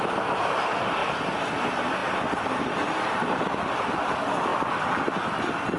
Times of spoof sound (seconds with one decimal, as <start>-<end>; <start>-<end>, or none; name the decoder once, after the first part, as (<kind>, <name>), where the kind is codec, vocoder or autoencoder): none